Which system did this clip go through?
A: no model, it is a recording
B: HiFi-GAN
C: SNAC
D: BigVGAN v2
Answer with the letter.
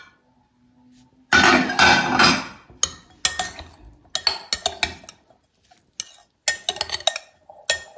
A